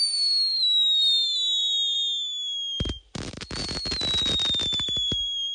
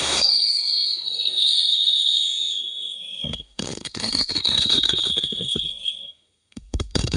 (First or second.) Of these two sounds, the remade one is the second